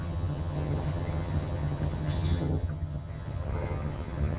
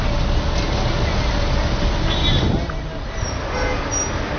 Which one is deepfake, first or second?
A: first